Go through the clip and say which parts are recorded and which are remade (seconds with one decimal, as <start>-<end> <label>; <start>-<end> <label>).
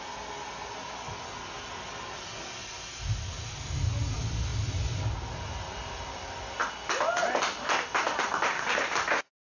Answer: 0.0-4.5 recorded; 4.5-5.3 remade; 5.3-9.5 recorded